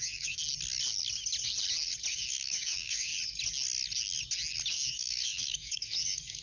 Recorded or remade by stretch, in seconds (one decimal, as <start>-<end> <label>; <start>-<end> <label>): 0.0-0.4 remade; 0.4-2.1 recorded; 2.1-3.1 remade; 3.1-4.7 recorded; 4.7-6.4 remade